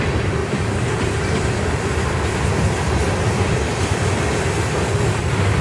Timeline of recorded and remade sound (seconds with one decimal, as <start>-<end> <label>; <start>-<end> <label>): 0.0-5.6 recorded